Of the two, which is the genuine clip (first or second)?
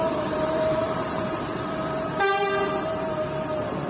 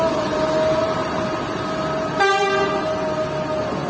second